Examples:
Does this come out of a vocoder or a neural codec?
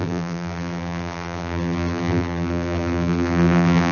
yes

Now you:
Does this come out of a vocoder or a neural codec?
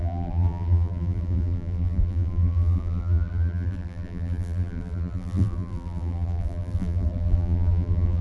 yes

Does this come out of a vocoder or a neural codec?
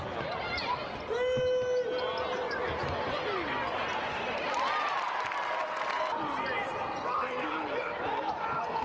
no